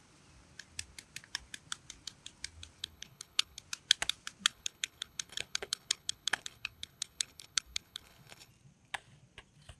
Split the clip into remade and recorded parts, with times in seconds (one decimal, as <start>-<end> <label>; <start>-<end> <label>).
0.0-2.8 recorded; 2.8-3.6 remade; 3.6-4.5 recorded; 4.5-8.5 remade; 8.5-9.8 recorded